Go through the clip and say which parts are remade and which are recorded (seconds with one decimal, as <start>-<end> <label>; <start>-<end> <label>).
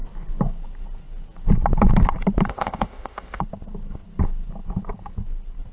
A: 0.0-2.5 recorded; 2.5-3.4 remade; 3.4-5.7 recorded